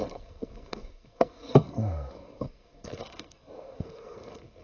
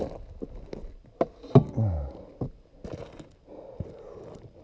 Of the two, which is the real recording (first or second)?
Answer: second